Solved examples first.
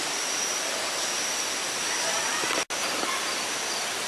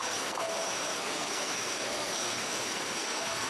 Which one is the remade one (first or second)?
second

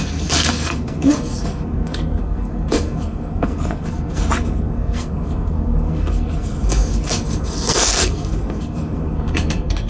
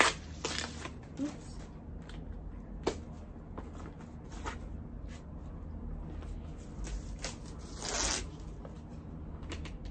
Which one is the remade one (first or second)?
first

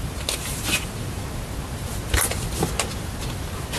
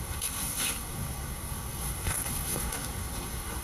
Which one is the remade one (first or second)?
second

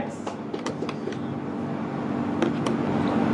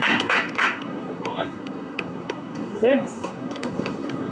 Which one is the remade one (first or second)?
second